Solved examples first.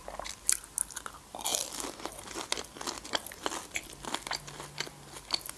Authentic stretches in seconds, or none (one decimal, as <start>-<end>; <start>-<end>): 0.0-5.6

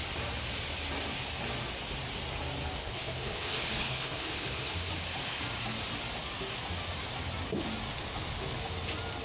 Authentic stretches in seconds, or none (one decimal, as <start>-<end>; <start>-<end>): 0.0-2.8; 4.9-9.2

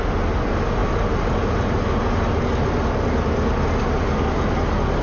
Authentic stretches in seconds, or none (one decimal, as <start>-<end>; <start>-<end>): 0.0-5.0